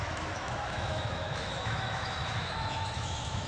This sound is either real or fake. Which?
fake